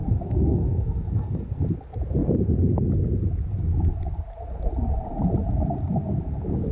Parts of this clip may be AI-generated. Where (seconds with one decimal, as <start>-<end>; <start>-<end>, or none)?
0.0-1.6